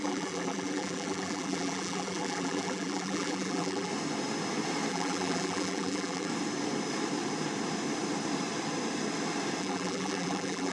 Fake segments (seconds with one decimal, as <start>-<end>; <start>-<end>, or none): 0.0-3.9; 4.9-6.3; 9.6-10.7